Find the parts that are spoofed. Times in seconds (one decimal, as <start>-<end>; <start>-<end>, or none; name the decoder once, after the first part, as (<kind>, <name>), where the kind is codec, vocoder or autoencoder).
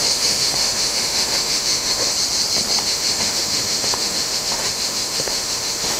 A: 0.0-2.1 (autoencoder, DAC-VAE); 2.8-6.0